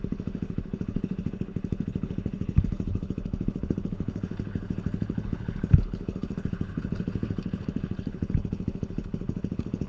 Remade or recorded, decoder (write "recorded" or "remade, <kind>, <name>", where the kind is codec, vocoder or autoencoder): remade, codec, HILCodec